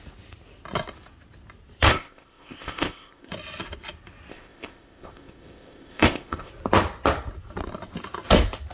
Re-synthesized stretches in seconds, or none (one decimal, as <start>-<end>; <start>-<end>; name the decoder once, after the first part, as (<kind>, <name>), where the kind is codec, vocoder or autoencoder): 1.9-3.3 (codec, ZipCodec); 4.3-6.5